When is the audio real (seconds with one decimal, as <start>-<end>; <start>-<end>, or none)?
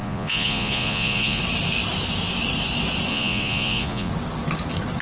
1.4-3.1; 4.1-5.0